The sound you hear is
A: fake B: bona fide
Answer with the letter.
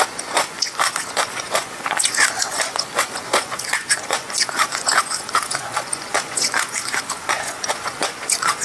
A